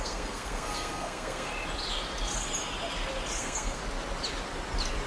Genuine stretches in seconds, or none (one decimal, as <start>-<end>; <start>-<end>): 1.5-3.4; 3.8-5.1